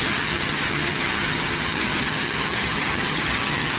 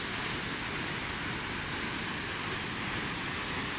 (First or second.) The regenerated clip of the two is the first